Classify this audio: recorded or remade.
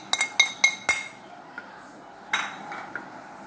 recorded